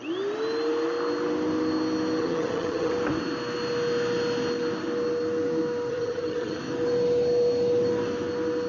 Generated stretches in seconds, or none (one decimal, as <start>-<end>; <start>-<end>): 2.2-2.9; 5.9-6.6